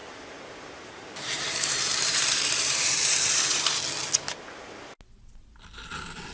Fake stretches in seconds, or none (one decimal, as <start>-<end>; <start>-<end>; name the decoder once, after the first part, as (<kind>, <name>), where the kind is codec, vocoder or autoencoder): 0.0-3.8 (vocoder, BigVGAN v2)